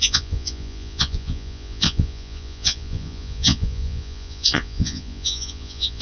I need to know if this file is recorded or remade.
remade